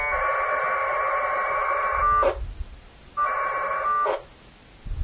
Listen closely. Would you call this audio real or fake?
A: real